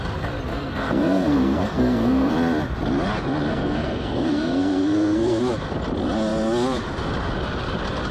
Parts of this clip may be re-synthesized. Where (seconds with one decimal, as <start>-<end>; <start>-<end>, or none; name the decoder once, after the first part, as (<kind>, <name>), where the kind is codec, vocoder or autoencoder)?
0.5-2.3 (codec, SNAC); 3.5-5.4